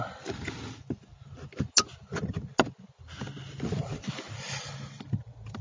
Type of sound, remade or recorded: recorded